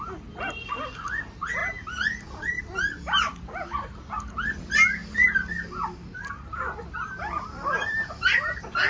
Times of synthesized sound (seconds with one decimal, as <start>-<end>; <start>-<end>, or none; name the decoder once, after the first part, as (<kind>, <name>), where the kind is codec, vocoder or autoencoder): none